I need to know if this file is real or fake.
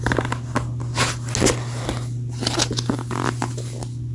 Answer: real